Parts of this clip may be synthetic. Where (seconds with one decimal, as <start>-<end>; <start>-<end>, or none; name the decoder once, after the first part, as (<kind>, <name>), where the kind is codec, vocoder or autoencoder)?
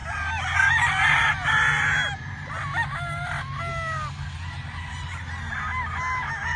none